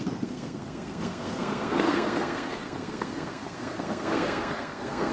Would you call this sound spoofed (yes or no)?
yes